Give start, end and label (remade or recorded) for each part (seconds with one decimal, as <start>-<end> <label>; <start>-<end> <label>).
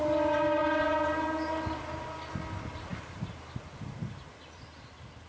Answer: 0.0-5.3 recorded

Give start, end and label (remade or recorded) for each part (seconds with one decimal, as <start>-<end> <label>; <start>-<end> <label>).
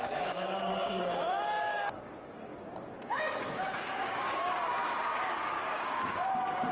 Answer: 0.0-2.5 remade; 2.5-3.1 recorded; 3.1-6.7 remade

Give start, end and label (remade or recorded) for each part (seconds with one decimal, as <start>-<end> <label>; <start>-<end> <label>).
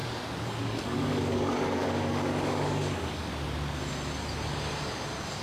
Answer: 0.0-0.6 recorded; 0.6-3.3 remade; 3.3-5.4 recorded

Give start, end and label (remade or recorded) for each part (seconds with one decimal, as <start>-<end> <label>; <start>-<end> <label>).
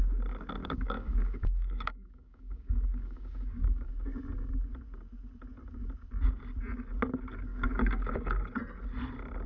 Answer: 0.0-0.6 recorded; 0.6-3.9 remade; 3.9-7.5 recorded; 7.5-8.4 remade; 8.4-9.5 recorded